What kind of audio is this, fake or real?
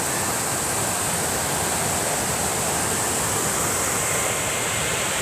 real